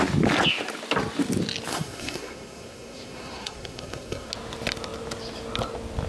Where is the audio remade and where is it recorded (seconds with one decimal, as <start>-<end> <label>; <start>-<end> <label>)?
0.0-1.7 recorded; 1.7-4.3 remade; 4.3-6.1 recorded